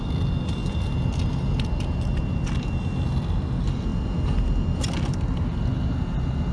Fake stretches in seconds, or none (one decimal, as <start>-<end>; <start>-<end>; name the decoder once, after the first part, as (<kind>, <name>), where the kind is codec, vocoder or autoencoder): none